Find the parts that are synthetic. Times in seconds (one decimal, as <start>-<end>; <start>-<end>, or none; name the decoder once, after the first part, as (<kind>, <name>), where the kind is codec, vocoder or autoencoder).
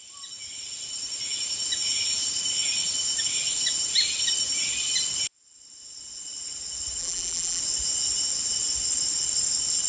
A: 7.0-7.6 (vocoder, BigVGAN v2)